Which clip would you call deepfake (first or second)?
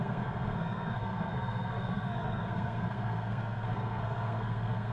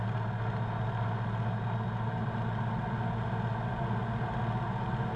first